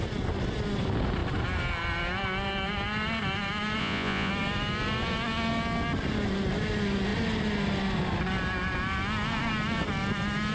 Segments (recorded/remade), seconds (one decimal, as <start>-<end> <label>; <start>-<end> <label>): 0.0-3.8 recorded; 3.8-4.3 remade; 4.3-10.5 recorded